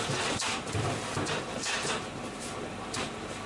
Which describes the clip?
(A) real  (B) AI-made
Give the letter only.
B